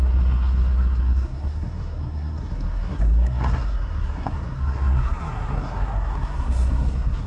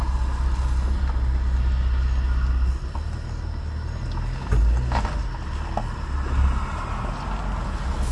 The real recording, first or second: second